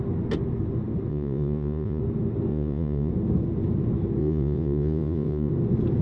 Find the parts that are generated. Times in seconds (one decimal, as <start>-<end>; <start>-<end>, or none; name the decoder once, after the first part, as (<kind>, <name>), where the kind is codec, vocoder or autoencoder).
1.1-2.0 (vocoder, Vocos); 2.5-3.1; 4.2-5.5